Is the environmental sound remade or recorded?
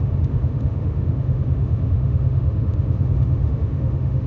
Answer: remade